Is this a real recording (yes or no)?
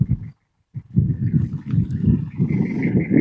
yes